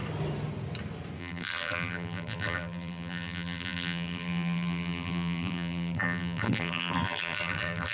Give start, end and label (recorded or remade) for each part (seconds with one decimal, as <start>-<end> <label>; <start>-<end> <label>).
0.0-1.2 recorded; 1.2-7.9 remade